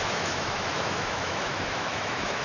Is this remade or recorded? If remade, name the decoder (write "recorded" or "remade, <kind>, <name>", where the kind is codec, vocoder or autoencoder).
remade, autoencoder, DAC-VAE